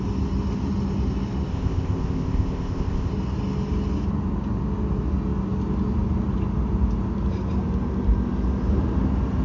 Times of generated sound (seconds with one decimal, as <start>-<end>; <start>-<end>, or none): 1.5-3.1